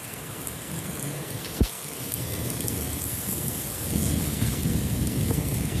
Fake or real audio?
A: fake